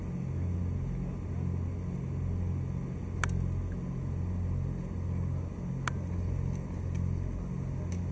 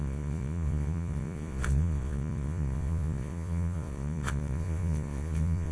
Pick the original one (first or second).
first